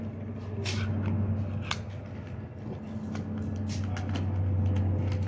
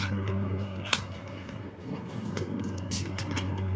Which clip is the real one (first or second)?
first